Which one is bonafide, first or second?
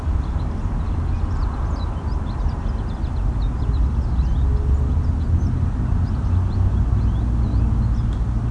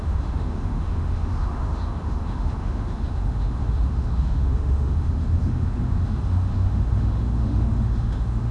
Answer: first